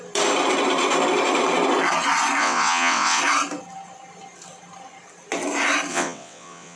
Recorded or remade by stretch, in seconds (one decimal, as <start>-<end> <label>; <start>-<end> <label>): 0.0-2.4 recorded; 2.4-3.2 remade; 3.2-5.9 recorded; 5.9-6.8 remade